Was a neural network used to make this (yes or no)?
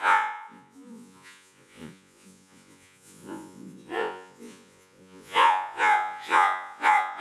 yes